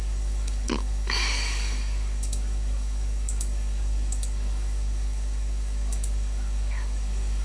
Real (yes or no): no